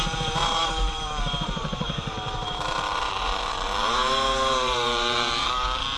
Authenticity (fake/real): fake